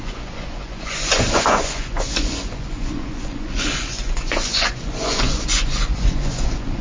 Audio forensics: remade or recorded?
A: remade